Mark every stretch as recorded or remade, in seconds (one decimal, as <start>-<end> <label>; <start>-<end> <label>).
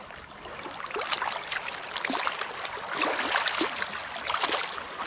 0.0-5.1 recorded